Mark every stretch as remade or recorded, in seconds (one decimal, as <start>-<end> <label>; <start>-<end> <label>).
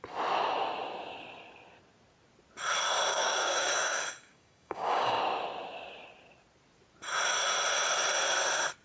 0.0-3.1 recorded; 3.1-5.2 remade; 5.2-8.8 recorded